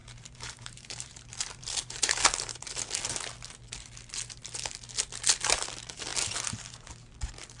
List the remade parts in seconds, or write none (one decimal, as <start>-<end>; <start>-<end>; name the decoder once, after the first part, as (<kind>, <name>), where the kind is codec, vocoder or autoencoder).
0.0-2.8 (vocoder, BigVGAN v2); 6.1-6.9